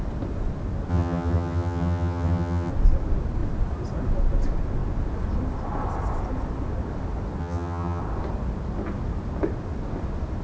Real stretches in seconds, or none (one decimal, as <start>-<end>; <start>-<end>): 0.0-0.9; 2.7-7.4; 8.0-10.4